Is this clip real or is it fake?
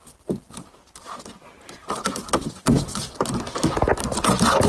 real